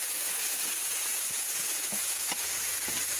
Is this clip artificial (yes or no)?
yes